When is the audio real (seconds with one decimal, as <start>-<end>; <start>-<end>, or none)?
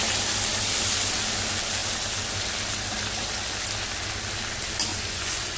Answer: 0.0-4.9